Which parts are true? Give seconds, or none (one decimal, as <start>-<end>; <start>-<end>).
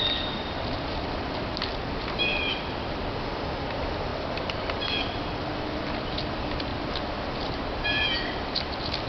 6.7-9.1